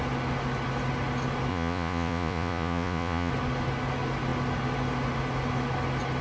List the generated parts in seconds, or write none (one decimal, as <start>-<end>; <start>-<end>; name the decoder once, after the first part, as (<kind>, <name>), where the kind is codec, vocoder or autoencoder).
1.5-3.3 (vocoder, Vocos)